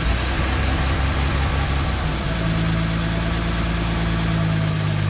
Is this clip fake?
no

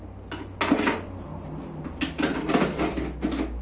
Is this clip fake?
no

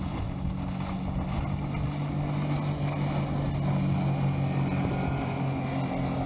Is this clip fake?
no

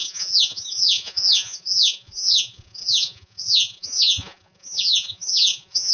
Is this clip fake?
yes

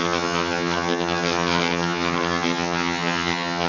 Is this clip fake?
yes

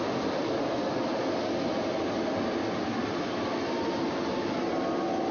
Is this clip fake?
no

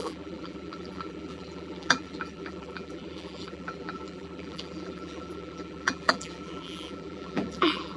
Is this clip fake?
yes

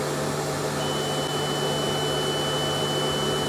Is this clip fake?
no